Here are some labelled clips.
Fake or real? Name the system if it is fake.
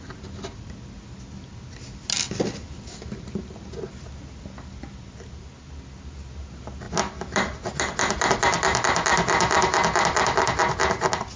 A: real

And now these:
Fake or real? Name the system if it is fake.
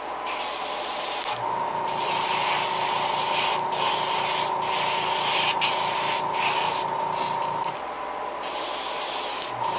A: real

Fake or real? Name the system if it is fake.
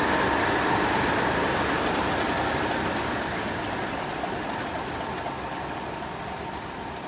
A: real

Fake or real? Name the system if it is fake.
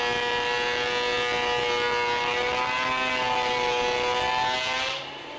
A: real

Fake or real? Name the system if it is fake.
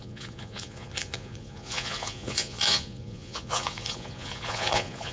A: fake, vocoder, Vocos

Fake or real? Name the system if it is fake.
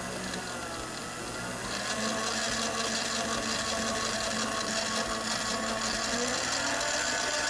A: real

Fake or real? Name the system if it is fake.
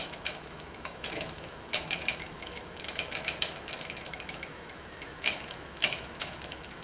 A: fake, autoencoder, DAC-VAE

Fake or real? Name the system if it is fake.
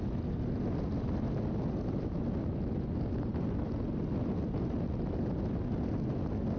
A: real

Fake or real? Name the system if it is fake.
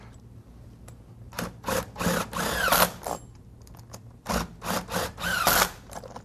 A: real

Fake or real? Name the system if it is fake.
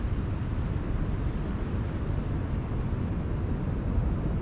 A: real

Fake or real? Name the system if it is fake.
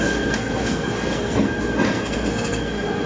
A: fake, codec, SNAC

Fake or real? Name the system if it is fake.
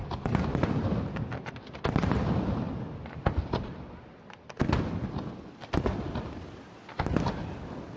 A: real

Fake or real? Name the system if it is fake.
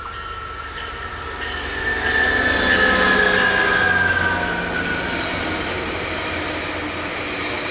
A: real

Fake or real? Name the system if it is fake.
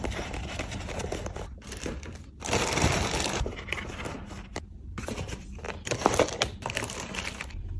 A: fake, vocoder, BigVGAN v2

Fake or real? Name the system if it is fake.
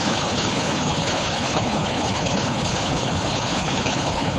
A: fake, codec, HILCodec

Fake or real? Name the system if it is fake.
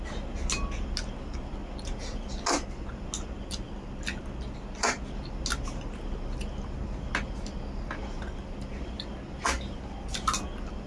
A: real